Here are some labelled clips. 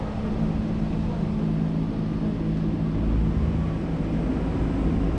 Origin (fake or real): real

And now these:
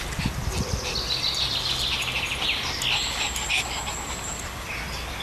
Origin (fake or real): real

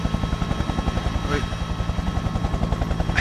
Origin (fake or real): real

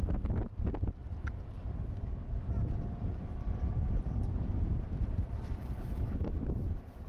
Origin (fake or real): fake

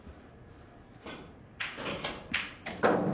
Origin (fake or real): fake